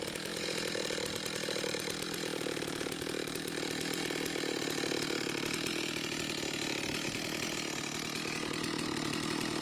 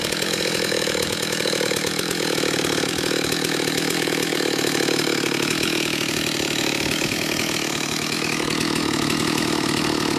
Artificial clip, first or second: second